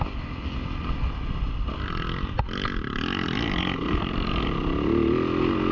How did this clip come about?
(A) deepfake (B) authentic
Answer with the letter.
B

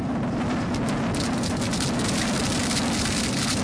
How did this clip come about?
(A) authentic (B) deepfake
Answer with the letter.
A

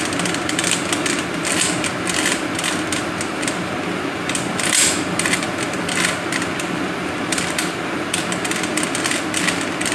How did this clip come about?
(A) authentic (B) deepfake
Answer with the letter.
A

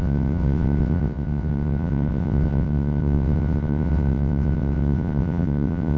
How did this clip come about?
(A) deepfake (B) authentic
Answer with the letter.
A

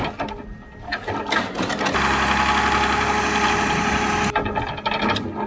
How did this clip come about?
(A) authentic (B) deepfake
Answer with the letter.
A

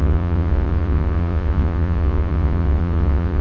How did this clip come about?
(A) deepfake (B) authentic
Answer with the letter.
A